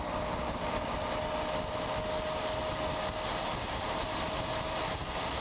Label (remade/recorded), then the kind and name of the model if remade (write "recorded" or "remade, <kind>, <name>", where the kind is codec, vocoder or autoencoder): recorded